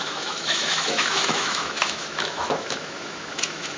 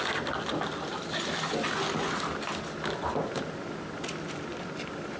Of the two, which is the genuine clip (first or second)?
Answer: second